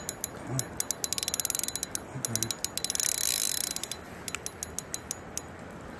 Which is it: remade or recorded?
recorded